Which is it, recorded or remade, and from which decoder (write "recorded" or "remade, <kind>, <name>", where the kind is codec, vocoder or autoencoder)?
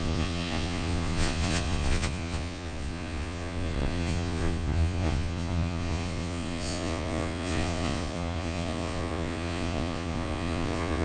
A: remade, vocoder, Vocos